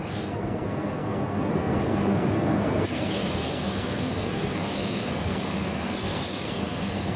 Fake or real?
fake